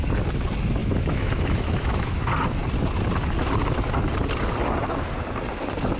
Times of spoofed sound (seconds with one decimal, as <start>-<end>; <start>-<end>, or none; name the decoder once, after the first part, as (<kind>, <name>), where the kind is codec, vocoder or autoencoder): 0.8-2.2 (autoencoder, DAC-VAE)